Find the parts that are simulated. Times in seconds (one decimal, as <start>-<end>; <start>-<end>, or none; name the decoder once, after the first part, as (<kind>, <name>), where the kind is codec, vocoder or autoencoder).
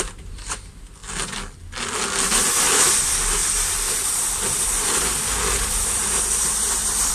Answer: 0.0-1.0 (vocoder, BigVGAN v2); 2.6-7.1